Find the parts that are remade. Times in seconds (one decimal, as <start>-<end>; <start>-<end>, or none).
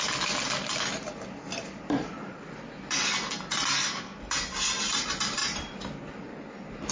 5.4-6.1